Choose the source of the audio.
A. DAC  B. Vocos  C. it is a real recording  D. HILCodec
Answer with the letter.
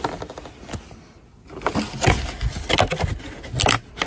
C